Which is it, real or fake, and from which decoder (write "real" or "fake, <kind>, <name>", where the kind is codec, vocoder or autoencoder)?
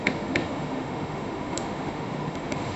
fake, autoencoder, DAC-VAE